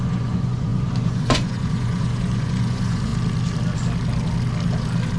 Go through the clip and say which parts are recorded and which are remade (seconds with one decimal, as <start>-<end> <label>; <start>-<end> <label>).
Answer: 0.0-3.1 remade; 3.1-5.2 recorded